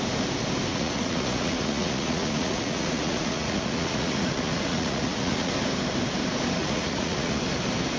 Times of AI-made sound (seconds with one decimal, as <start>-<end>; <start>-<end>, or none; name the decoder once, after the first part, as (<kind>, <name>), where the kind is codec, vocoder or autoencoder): 0.7-5.5 (vocoder, Vocos); 6.6-7.4